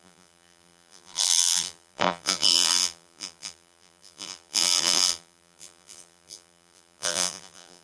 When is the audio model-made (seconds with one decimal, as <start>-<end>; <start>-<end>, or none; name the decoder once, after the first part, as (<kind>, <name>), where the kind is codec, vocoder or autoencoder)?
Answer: 0.0-7.8 (vocoder, BigVGAN v2)